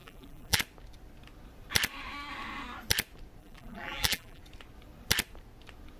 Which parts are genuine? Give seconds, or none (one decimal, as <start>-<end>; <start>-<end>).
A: 0.6-3.4; 4.4-6.0